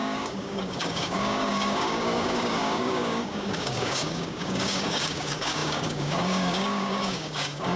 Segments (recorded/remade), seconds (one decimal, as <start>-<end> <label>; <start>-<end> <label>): 0.0-7.8 remade